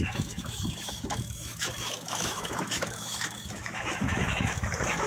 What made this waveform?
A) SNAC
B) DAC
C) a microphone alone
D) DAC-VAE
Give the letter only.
D